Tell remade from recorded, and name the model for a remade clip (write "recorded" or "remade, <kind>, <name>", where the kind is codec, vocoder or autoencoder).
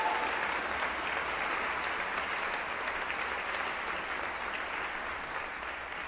recorded